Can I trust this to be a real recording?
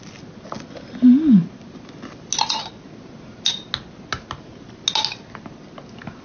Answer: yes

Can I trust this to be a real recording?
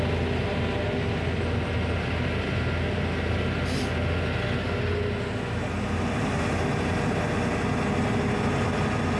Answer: yes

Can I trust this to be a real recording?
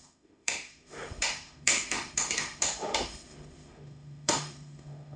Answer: no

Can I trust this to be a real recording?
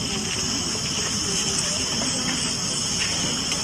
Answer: yes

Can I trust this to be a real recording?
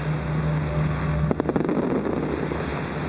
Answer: yes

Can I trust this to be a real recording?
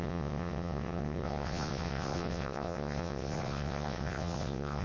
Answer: no